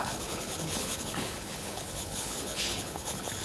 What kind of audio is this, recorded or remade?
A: remade